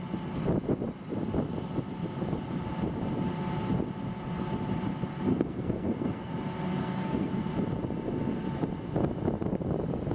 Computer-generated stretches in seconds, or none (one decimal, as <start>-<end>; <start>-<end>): 5.3-6.3; 6.8-7.5